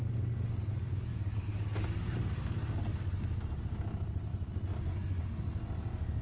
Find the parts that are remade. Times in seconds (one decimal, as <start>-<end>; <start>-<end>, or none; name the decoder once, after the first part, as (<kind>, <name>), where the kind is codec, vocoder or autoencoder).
1.1-3.2 (codec, DAC)